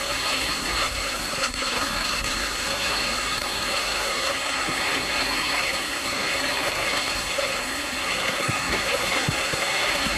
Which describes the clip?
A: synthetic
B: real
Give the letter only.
A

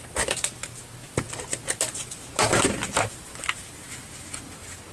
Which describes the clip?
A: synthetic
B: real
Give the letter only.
B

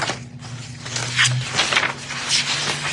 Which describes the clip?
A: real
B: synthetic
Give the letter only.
A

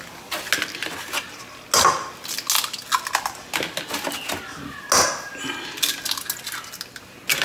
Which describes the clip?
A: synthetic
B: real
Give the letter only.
B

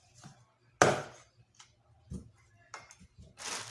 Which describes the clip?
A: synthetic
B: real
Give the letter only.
B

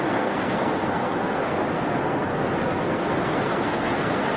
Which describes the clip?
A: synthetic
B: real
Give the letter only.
A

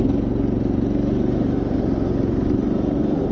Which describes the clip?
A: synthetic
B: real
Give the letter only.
B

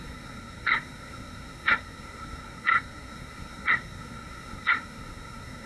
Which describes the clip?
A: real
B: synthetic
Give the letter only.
B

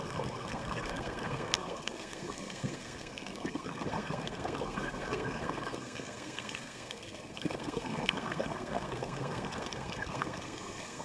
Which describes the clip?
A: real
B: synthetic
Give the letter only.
B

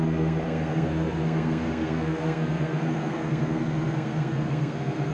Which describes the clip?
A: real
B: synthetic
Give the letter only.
B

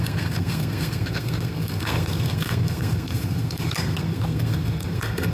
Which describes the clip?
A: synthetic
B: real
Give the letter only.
A